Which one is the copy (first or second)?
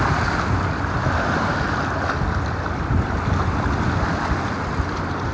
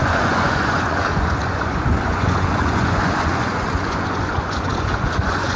second